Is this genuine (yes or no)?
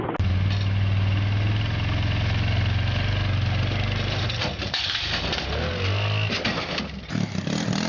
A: yes